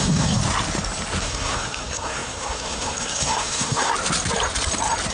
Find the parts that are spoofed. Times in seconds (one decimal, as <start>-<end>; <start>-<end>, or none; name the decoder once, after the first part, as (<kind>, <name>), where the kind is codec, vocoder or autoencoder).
0.0-0.4 (codec, SNAC); 1.2-3.9